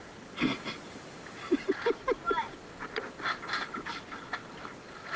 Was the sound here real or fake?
real